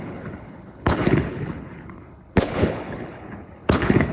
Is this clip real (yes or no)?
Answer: no